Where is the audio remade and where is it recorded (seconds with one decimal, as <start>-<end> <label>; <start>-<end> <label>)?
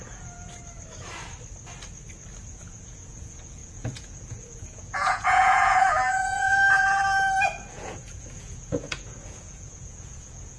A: 0.0-0.5 remade; 0.5-2.4 recorded; 2.4-7.0 remade; 7.0-7.7 recorded; 7.7-10.6 remade